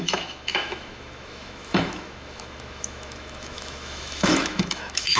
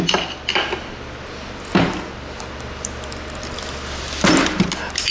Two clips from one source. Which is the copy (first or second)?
first